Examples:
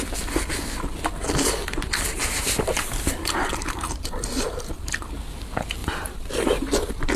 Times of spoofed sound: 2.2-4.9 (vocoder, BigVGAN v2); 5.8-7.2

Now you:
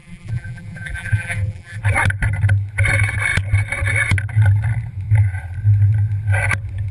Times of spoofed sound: 0.0-1.8 (vocoder, BigVGAN v2)

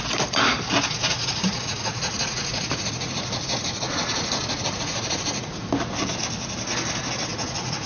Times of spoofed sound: 1.0-5.7 (vocoder, Vocos); 7.3-7.9

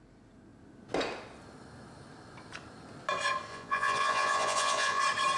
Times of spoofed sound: 3.5-5.0 (vocoder, Vocos)

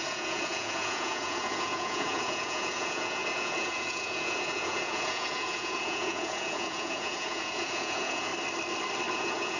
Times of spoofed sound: 0.0-8.3 (vocoder, Vocos); 9.1-9.6